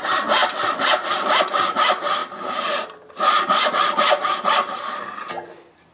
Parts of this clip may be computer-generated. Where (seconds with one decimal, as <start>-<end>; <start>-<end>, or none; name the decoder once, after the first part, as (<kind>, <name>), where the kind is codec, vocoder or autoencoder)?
2.2-3.7 (vocoder, BigVGAN v2)